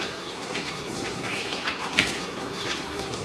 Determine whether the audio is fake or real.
fake